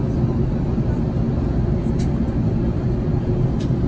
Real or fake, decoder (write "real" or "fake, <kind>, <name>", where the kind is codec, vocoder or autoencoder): real